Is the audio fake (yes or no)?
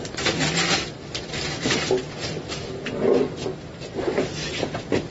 no